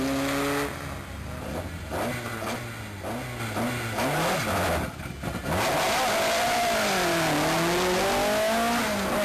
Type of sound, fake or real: real